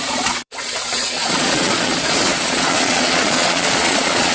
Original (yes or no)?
no